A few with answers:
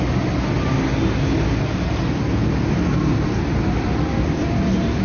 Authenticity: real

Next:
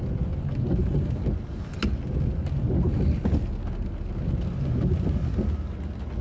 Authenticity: real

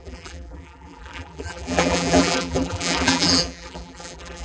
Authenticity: fake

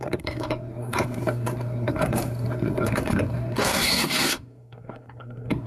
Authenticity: fake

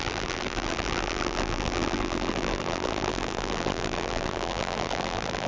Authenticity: fake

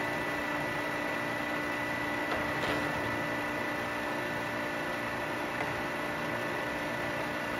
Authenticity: real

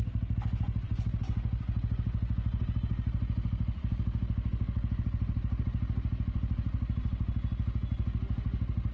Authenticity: real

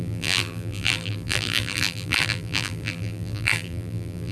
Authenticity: fake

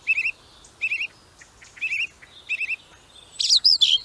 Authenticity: real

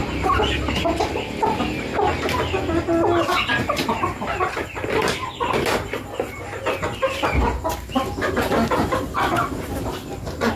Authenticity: real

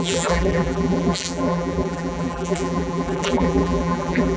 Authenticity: fake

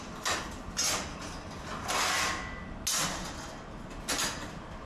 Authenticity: real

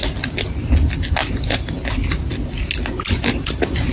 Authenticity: real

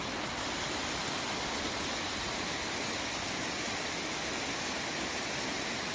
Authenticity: real